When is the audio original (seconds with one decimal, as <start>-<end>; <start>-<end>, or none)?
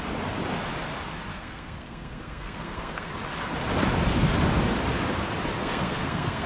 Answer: 0.0-1.3; 3.1-5.6